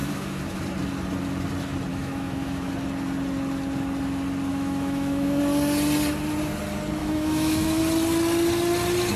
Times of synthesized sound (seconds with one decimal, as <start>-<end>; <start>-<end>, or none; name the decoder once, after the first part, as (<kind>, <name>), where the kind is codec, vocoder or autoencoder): 0.0-0.6 (autoencoder, DAC-VAE); 1.9-2.7; 4.5-5.4; 7.0-7.8